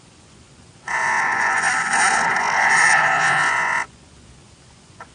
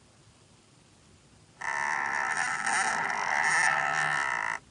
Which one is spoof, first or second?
first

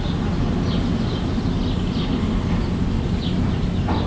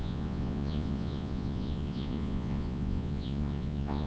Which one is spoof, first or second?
second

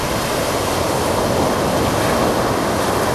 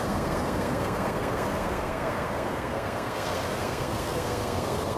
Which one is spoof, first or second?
second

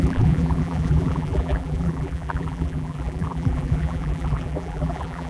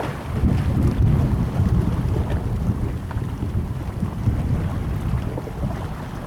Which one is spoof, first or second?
first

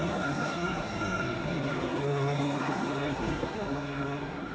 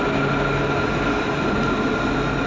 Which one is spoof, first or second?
first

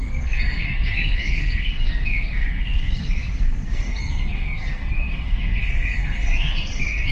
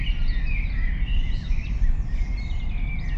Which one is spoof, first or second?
first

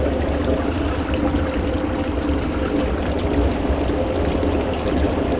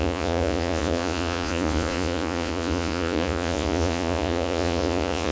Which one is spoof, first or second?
second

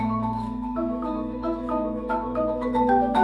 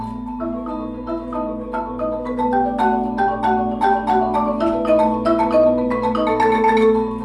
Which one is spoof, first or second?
first